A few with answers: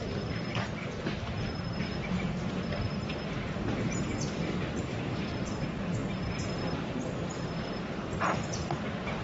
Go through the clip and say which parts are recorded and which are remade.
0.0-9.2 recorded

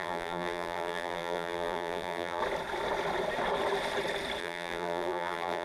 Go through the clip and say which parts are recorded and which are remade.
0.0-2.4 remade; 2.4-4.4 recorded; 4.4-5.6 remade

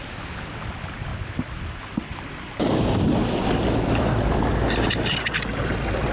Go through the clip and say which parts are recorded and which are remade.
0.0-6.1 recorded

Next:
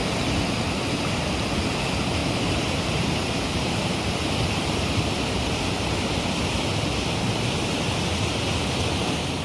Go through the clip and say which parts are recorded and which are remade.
0.0-0.6 remade; 0.6-2.2 recorded; 2.2-6.4 remade; 6.4-9.4 recorded

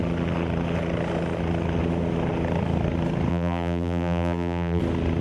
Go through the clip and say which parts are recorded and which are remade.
0.0-3.3 recorded; 3.3-4.8 remade; 4.8-5.2 recorded